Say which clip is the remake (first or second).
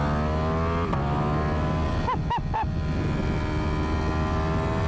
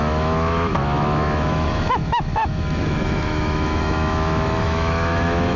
second